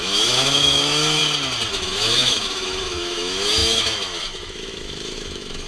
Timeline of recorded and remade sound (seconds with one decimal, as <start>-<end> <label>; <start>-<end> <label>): 0.0-1.2 remade; 1.2-1.7 recorded; 1.7-5.7 remade